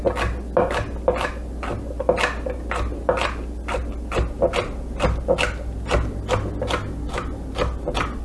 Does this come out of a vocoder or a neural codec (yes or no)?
no